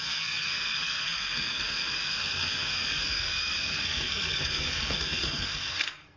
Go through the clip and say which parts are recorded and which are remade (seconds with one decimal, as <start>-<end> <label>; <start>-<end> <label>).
0.0-6.2 remade